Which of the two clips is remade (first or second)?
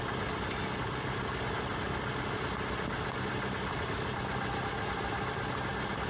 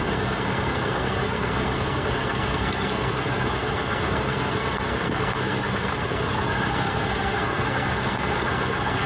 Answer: second